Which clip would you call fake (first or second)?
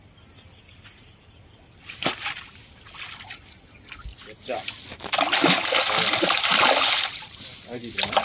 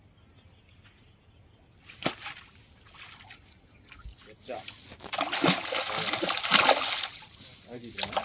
first